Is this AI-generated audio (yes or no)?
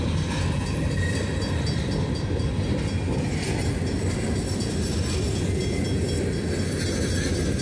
no